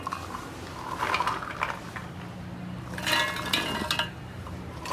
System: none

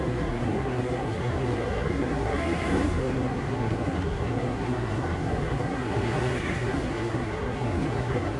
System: codec, SNAC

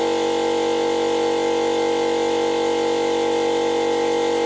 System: none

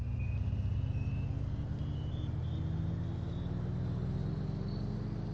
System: none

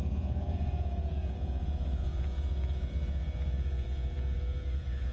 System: vocoder, Vocos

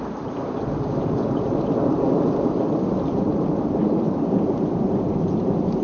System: vocoder, BigVGAN v2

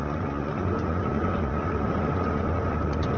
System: vocoder, Vocos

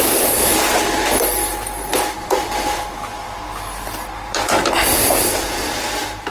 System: vocoder, BigVGAN v2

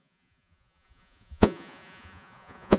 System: vocoder, Vocos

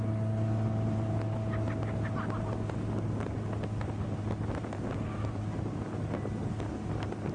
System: none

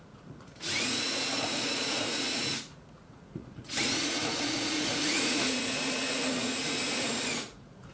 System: vocoder, Vocos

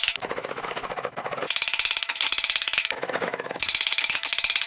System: autoencoder, DAC-VAE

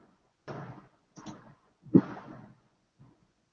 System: vocoder, Vocos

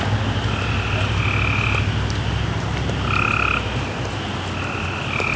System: none